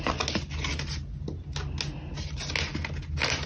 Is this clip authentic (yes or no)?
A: yes